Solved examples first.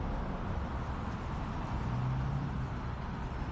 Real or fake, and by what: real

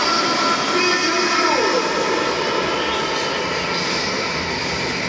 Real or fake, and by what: real